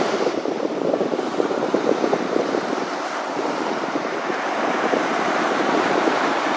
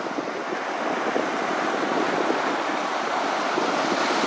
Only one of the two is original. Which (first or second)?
second